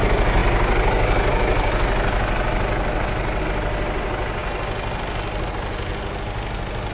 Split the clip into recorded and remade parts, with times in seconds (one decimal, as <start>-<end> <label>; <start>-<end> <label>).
0.0-6.9 recorded